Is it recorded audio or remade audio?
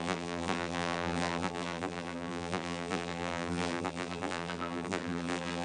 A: remade